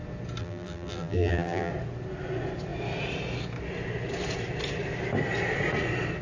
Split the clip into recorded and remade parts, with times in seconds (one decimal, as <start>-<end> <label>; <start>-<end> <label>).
0.0-0.4 recorded; 0.4-1.7 remade; 1.7-6.2 recorded